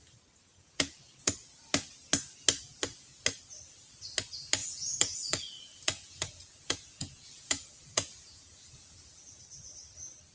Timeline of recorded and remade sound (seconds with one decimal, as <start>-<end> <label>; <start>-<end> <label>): 0.0-0.6 recorded; 0.6-1.3 remade; 1.3-4.6 recorded; 4.6-9.4 remade; 9.4-10.3 recorded